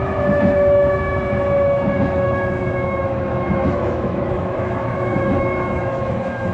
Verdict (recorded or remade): remade